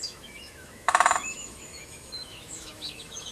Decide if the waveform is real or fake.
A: fake